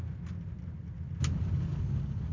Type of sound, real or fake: real